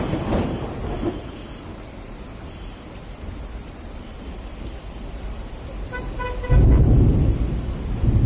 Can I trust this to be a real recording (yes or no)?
no